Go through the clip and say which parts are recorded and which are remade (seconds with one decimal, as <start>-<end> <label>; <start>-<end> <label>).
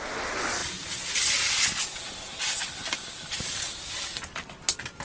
0.0-5.0 recorded